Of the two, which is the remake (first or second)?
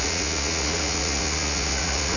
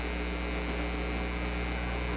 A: first